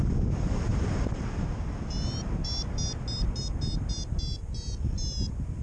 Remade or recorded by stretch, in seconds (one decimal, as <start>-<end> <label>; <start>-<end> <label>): 0.0-5.6 recorded

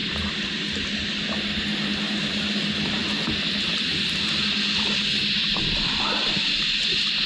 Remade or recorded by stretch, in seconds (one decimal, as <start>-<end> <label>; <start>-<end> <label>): 0.0-7.3 recorded

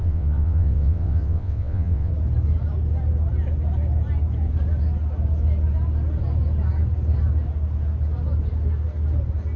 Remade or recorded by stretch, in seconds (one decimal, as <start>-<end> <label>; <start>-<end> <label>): 0.0-2.1 remade; 2.1-9.6 recorded

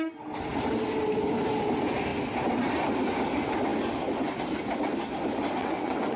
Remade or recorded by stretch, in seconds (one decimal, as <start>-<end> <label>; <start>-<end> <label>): 0.0-5.6 recorded; 5.6-6.2 remade

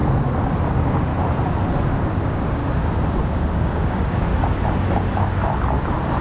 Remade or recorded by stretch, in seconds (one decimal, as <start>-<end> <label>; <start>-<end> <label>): 0.0-0.7 recorded; 0.7-1.1 remade; 1.1-2.2 recorded; 2.2-2.6 remade; 2.6-3.1 recorded; 3.1-4.3 remade; 4.3-6.2 recorded

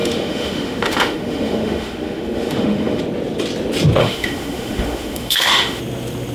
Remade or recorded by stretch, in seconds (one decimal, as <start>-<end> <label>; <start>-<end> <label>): 0.0-3.0 remade; 3.0-4.0 recorded; 4.0-5.8 remade; 5.8-6.3 recorded

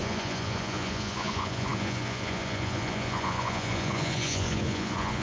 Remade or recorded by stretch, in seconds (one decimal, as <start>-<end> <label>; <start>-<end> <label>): 0.0-5.2 remade

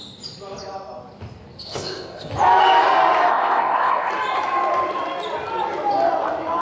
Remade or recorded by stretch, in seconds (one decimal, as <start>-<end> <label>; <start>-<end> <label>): 0.0-1.7 recorded; 1.7-2.3 remade; 2.3-3.3 recorded; 3.3-4.1 remade; 4.1-6.6 recorded